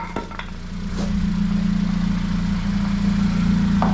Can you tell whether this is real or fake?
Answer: real